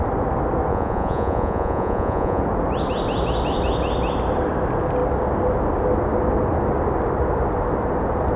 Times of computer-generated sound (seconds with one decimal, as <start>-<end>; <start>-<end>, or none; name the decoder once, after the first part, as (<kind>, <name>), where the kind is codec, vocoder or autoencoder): 0.7-2.4 (vocoder, Vocos)